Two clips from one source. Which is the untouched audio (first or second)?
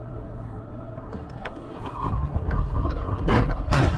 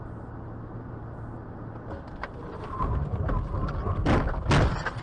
second